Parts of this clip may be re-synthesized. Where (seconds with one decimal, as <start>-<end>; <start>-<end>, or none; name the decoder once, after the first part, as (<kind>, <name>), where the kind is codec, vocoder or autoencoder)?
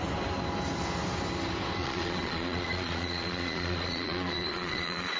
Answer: 1.8-5.2 (vocoder, Vocos)